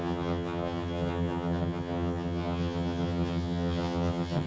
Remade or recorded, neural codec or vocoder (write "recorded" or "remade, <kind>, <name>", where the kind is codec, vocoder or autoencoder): remade, vocoder, HiFi-GAN